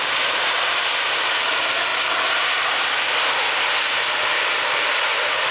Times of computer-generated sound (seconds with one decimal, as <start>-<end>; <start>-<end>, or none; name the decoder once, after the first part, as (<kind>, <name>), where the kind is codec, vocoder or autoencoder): none